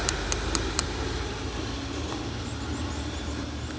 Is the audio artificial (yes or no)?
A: no